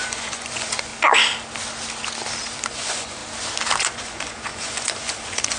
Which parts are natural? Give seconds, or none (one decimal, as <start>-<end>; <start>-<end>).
0.9-2.7; 3.2-3.8